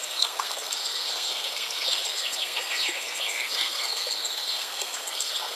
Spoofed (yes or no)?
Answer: yes